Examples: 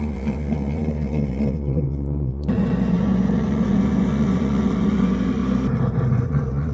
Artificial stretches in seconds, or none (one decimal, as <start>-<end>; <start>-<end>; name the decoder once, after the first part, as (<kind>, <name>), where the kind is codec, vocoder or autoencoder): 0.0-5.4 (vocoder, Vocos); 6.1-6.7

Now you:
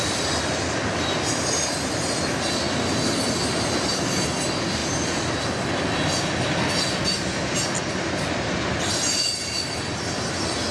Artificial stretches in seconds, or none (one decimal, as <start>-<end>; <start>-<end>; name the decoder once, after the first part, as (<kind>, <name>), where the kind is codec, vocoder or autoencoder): none

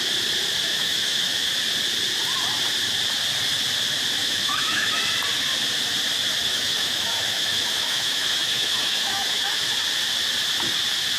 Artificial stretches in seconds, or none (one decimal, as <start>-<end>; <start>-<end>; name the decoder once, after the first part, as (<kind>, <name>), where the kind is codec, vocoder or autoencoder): 0.7-1.5 (autoencoder, DAC-VAE); 4.2-5.0; 6.5-9.7

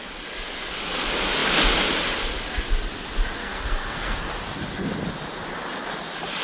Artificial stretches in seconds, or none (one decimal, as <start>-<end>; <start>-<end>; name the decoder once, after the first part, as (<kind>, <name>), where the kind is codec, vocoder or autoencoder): 3.4-4.3 (codec, SNAC)

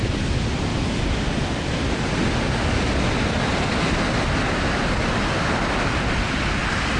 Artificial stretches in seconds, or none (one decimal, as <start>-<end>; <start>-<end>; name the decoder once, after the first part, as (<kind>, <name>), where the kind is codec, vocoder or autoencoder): none

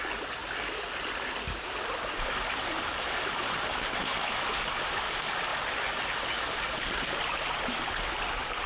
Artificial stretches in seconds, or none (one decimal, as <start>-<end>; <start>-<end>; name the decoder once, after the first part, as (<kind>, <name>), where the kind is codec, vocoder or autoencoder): none

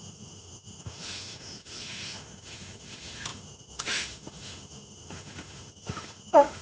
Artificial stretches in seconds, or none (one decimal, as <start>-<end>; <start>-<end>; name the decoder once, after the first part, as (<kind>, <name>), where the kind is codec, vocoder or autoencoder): 0.0-6.6 (autoencoder, DAC-VAE)